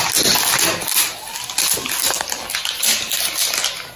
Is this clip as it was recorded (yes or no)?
yes